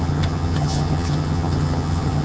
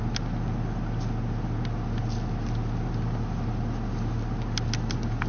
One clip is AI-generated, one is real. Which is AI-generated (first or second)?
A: first